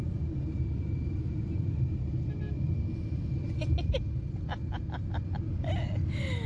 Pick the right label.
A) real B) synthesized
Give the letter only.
A